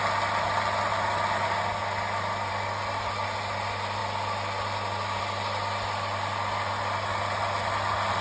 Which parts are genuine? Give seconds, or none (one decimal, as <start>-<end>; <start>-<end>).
0.0-8.2